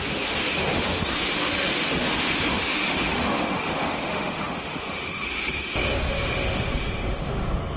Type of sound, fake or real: fake